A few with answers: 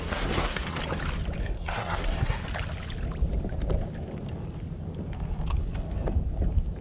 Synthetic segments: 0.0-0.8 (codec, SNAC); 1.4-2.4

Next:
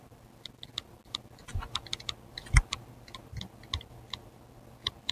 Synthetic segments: none

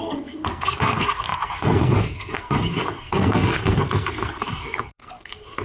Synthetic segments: 0.0-5.6 (codec, SNAC)